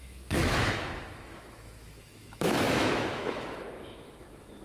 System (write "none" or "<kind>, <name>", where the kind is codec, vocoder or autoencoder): autoencoder, DAC-VAE